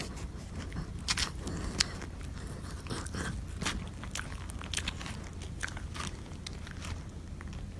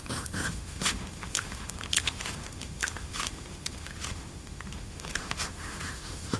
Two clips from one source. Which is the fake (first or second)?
second